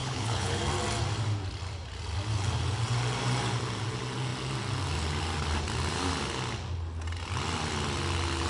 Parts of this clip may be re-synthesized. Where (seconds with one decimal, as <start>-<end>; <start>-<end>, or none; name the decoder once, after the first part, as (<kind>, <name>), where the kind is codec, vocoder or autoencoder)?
0.0-0.6 (codec, HILCodec)